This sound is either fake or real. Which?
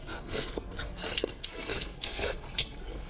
fake